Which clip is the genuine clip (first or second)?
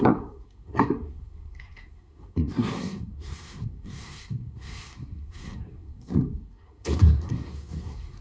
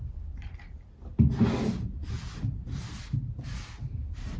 second